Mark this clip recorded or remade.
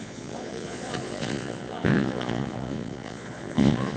remade